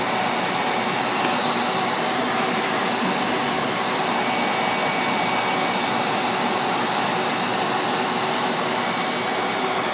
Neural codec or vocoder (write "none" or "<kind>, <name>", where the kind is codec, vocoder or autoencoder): none